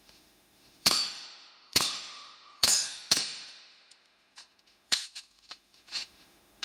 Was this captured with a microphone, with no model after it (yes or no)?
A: no